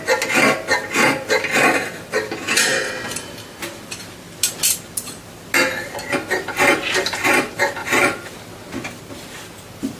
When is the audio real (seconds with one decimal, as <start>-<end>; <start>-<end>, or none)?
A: 0.0-7.8; 8.3-10.0